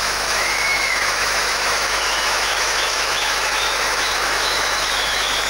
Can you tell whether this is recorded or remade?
remade